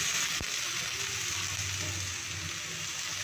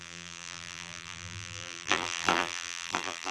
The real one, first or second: first